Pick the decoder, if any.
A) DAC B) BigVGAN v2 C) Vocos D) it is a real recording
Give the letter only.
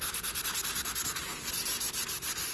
D